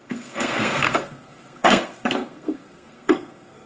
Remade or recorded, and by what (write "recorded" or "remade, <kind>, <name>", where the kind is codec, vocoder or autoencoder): remade, codec, SNAC